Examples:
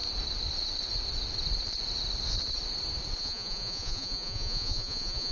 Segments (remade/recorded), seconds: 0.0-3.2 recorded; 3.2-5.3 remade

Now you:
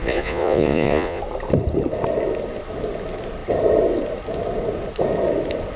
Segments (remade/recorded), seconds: 0.0-1.2 remade; 1.2-5.8 recorded

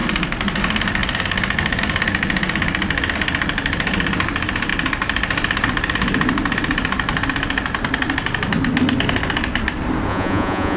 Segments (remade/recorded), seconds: 0.0-10.1 recorded; 10.1-10.8 remade

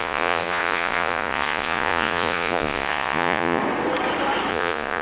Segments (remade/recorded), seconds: 0.0-3.6 remade; 3.6-4.5 recorded; 4.5-5.0 remade